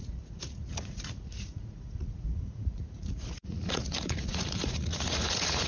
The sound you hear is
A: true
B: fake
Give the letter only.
B